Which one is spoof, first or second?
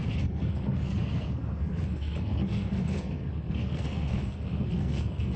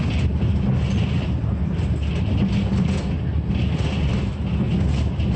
first